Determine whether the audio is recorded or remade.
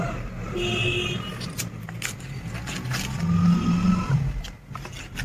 recorded